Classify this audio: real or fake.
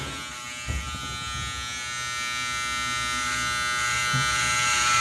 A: real